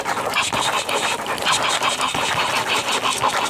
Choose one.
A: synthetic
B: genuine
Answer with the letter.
B